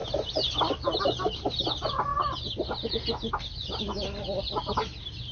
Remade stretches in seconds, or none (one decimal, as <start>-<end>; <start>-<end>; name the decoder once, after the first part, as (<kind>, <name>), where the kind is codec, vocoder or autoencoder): none